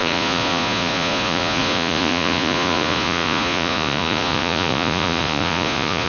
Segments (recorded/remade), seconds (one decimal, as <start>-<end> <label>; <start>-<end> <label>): 0.0-6.1 remade